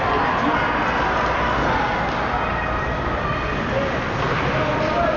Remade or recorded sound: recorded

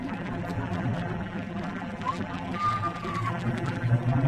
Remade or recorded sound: remade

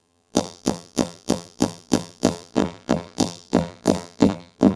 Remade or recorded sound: remade